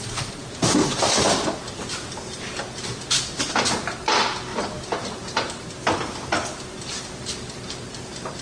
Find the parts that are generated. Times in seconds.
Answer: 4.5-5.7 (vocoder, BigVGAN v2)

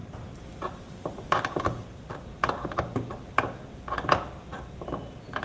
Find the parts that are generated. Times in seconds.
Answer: 0.0-3.1 (vocoder, BigVGAN v2)

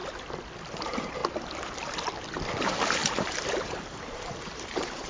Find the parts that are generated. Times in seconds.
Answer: 0.7-1.2 (vocoder, BigVGAN v2); 2.6-5.1

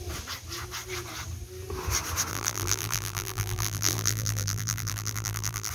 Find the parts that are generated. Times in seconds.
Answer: 2.3-5.7 (vocoder, BigVGAN v2)

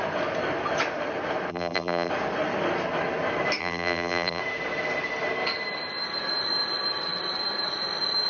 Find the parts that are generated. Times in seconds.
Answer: 1.5-2.1 (vocoder, BigVGAN v2); 3.6-4.4